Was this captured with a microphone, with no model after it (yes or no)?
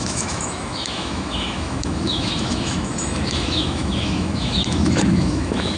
no